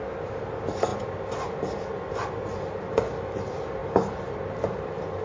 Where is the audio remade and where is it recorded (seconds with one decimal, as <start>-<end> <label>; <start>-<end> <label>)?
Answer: 0.0-5.2 recorded